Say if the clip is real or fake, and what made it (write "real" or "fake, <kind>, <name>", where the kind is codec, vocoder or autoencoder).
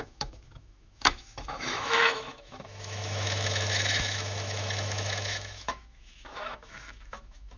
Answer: fake, autoencoder, DAC-VAE